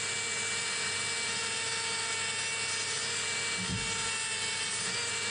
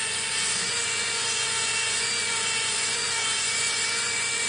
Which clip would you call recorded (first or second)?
first